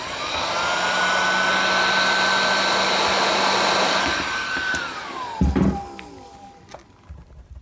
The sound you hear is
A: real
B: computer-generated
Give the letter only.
A